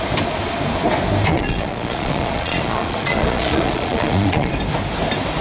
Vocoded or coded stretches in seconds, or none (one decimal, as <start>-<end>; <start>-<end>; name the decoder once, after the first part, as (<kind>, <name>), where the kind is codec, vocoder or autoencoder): 1.3-4.5 (vocoder, Vocos)